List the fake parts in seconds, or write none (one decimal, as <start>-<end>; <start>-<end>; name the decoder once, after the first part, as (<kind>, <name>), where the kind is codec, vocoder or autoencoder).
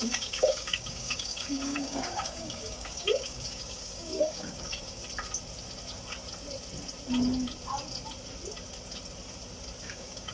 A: 0.0-5.0 (codec, DAC); 9.8-10.3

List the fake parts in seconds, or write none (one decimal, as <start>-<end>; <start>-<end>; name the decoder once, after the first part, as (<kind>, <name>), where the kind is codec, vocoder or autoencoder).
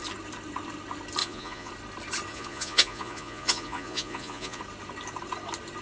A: 1.2-1.7 (vocoder, Vocos); 2.3-4.6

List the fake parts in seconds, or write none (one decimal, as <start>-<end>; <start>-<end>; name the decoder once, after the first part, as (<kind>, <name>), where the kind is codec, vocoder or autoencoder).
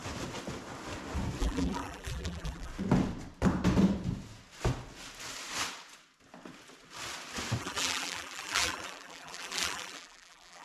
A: 1.4-2.7 (vocoder, BigVGAN v2); 7.6-10.6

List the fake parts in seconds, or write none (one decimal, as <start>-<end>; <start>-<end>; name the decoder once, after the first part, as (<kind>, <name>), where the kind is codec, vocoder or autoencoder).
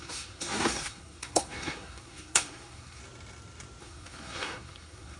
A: 0.0-3.0 (codec, SNAC); 3.8-5.2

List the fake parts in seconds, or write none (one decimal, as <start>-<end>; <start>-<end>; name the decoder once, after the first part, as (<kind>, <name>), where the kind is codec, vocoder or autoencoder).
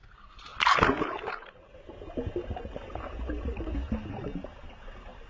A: 0.0-0.5 (vocoder, BigVGAN v2); 1.7-5.3